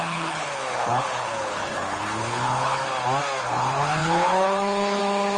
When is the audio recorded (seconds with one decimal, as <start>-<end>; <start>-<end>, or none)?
2.8-3.4